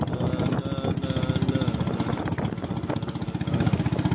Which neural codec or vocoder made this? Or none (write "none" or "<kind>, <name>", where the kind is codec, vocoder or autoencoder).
none